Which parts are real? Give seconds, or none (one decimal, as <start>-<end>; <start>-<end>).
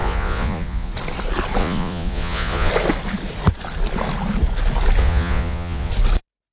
0.9-1.6; 2.7-5.0; 5.9-6.5